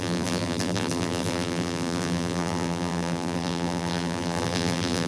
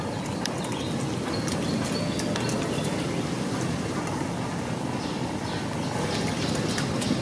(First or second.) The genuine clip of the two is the second